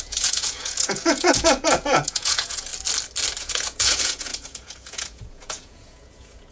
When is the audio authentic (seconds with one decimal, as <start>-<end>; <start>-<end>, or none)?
2.7-3.4